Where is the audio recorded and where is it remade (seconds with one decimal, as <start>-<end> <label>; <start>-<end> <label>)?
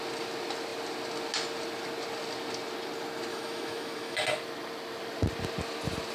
0.0-3.3 recorded; 3.3-4.2 remade; 4.2-6.1 recorded